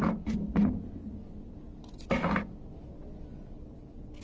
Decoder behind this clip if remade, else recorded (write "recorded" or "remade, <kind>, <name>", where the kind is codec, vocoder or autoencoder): recorded